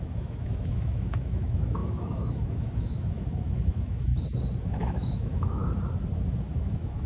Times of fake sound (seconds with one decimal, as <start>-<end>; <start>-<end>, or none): 0.0-4.1; 4.7-5.6; 6.6-7.1